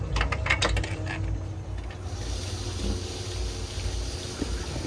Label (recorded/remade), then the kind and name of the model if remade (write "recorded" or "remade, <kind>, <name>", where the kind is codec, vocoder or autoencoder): recorded